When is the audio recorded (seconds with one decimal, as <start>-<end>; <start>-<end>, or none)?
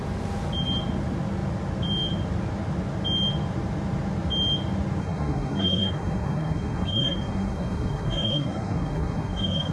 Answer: 0.0-5.0